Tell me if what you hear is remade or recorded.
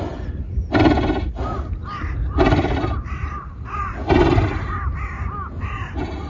recorded